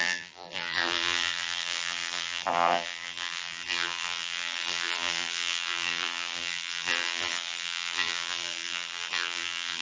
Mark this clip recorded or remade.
remade